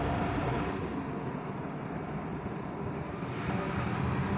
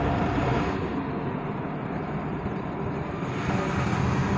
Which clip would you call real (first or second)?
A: second